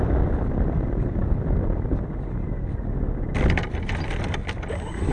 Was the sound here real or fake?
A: real